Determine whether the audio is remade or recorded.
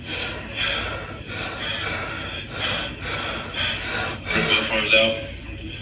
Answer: recorded